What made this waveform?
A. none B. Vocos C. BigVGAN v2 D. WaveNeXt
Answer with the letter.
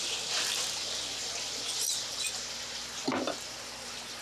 A